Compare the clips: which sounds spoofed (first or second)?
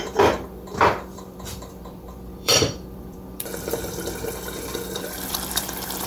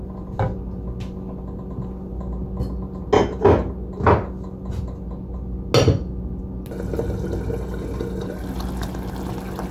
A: first